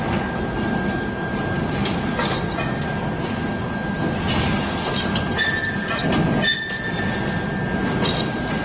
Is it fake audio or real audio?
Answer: real